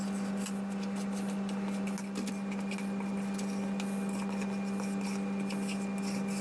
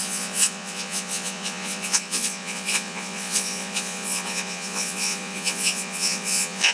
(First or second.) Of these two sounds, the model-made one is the second